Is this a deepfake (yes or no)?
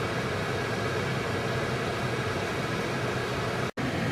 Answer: no